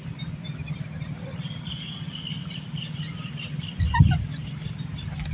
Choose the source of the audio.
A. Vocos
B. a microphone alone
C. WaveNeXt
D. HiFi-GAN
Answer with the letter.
B